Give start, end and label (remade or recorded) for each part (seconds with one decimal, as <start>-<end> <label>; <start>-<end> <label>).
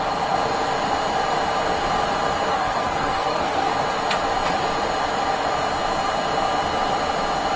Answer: 0.0-2.5 recorded; 2.5-3.7 remade; 3.7-7.6 recorded